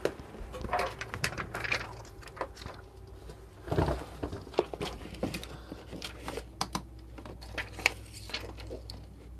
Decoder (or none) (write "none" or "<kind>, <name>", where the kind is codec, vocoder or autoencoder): none